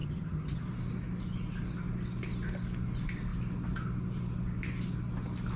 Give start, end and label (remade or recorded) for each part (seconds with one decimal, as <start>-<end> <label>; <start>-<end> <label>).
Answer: 0.0-0.6 remade; 0.6-5.6 recorded